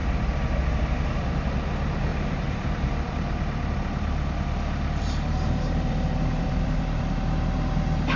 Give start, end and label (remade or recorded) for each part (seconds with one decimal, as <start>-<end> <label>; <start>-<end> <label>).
0.0-1.4 remade; 1.4-2.1 recorded; 2.1-7.0 remade; 7.0-8.2 recorded